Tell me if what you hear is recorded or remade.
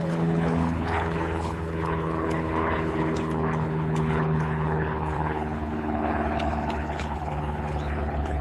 remade